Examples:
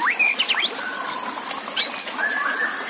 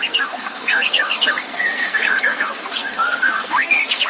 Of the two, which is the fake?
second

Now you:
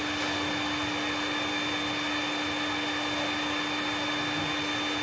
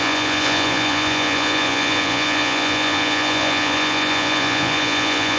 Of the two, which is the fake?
second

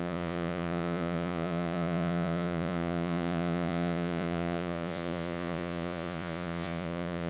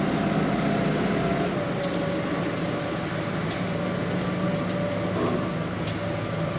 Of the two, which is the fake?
first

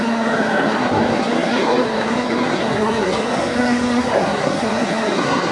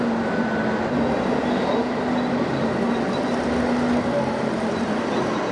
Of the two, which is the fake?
first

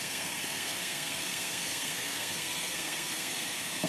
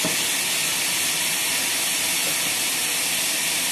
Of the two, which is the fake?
first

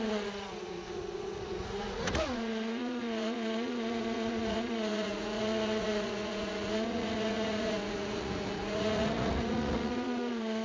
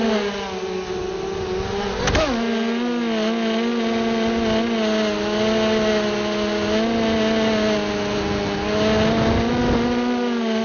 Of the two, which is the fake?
first